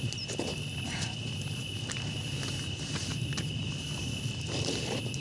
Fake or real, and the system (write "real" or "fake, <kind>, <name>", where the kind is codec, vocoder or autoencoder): real